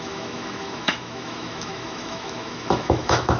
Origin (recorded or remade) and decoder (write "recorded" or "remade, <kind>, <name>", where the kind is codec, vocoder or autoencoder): remade, autoencoder, DAC-VAE